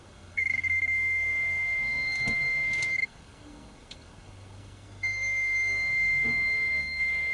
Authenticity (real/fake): fake